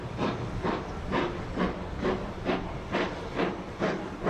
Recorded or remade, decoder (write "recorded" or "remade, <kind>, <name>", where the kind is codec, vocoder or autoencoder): recorded